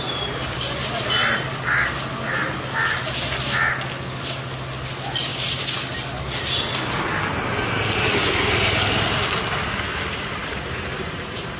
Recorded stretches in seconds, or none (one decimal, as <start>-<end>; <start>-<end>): 0.0-11.6